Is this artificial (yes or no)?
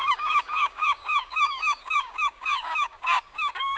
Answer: yes